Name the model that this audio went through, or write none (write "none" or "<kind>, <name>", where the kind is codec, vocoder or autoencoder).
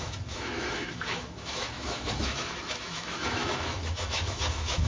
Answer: autoencoder, DAC-VAE